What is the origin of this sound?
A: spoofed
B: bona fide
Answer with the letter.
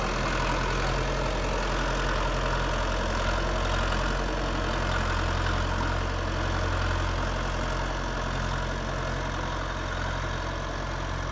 B